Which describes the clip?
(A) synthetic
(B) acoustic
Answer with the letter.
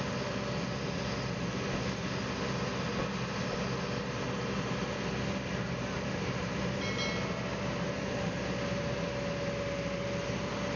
B